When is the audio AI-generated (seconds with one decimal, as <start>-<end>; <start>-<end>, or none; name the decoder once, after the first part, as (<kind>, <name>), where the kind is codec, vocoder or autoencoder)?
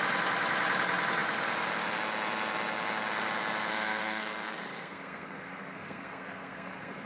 3.7-7.1 (codec, SNAC)